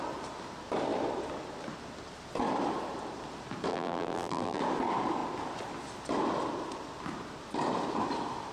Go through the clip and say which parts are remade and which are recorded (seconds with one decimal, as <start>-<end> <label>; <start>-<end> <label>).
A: 0.0-3.7 recorded; 3.7-4.6 remade; 4.6-8.5 recorded